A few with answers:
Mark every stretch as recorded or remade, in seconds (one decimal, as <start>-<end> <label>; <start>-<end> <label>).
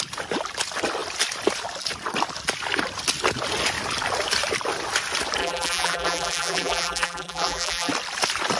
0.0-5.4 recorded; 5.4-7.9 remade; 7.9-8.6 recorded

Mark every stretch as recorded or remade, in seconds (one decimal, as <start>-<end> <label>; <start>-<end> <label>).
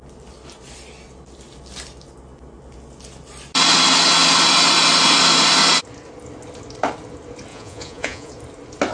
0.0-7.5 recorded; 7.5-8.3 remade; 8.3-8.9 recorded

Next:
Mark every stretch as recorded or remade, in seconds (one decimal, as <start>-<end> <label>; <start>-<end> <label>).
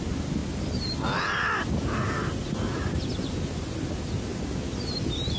0.0-5.4 recorded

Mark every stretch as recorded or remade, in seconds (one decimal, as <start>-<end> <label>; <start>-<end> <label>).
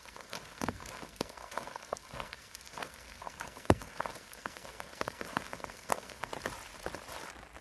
0.0-6.3 remade; 6.3-7.6 recorded